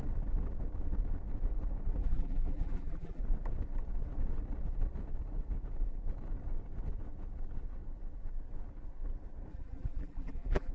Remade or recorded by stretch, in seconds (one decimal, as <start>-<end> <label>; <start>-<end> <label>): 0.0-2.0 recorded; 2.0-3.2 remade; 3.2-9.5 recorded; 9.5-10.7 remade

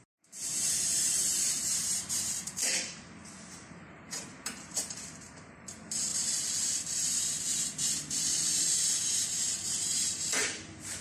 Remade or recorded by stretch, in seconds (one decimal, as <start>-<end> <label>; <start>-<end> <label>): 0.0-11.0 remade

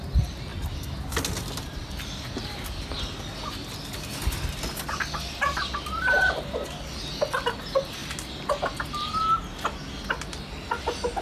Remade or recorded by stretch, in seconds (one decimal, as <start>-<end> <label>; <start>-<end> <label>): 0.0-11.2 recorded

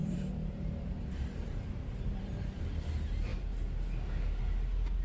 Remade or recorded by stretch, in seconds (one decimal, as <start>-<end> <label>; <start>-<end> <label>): 0.0-2.9 remade; 2.9-5.0 recorded